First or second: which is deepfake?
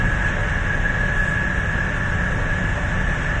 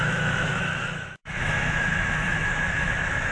second